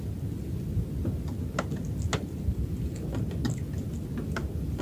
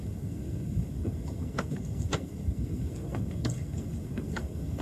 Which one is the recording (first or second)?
first